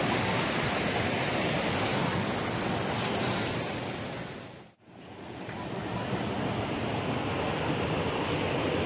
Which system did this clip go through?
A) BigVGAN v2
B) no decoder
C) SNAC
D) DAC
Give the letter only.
B